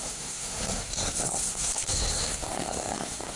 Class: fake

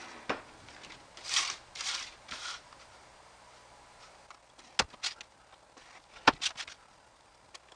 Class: real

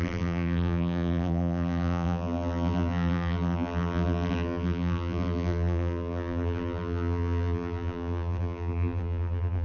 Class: fake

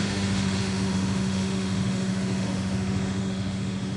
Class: fake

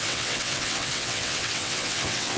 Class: fake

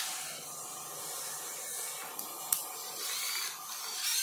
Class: real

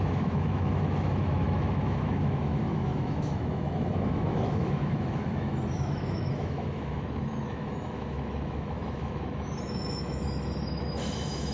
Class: fake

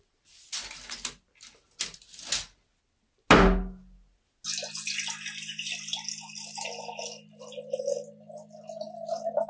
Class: real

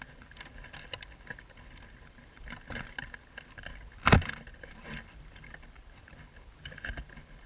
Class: real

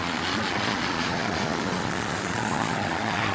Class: fake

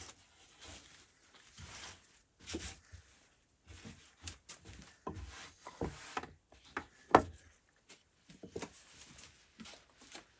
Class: real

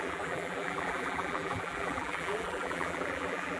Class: fake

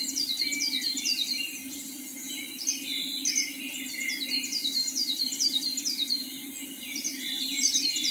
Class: fake